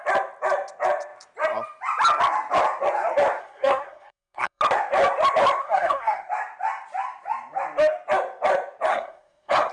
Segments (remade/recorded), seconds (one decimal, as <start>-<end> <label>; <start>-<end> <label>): 0.0-3.4 recorded; 3.4-4.6 remade; 4.6-5.6 recorded; 5.6-6.3 remade; 6.3-8.9 recorded; 8.9-9.7 remade